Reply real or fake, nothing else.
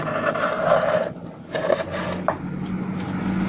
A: real